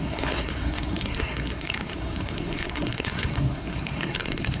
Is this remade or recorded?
remade